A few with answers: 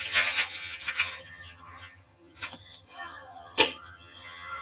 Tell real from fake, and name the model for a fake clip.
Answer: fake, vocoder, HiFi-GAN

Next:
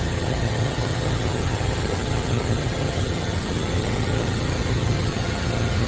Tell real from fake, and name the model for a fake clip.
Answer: fake, vocoder, HiFi-GAN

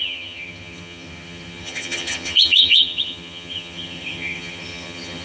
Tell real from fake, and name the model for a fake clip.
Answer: fake, vocoder, HiFi-GAN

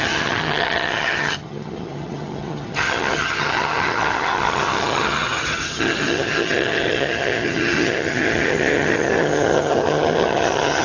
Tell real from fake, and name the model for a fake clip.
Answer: fake, vocoder, HiFi-GAN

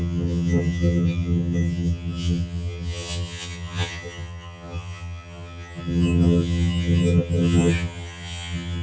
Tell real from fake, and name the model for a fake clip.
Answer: fake, vocoder, HiFi-GAN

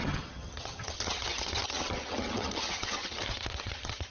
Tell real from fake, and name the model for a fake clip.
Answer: fake, vocoder, HiFi-GAN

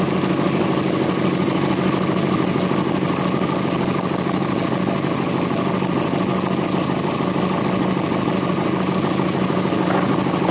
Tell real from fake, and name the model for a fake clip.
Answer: real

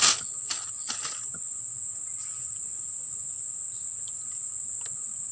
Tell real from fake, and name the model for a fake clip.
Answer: real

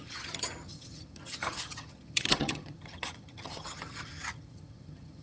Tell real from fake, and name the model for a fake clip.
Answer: fake, vocoder, HiFi-GAN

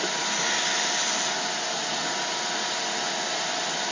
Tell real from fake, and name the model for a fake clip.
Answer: real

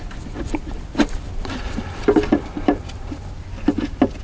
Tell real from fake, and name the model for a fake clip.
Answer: real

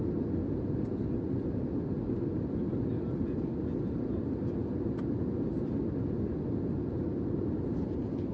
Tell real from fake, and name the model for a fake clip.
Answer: real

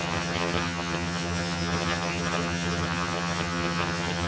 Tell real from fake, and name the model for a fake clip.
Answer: fake, vocoder, HiFi-GAN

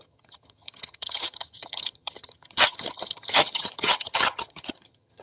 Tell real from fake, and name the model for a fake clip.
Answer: fake, vocoder, HiFi-GAN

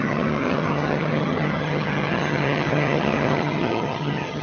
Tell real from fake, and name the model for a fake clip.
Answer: fake, vocoder, HiFi-GAN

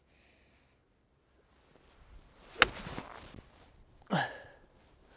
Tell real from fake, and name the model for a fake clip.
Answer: real